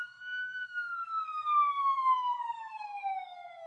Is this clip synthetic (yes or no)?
yes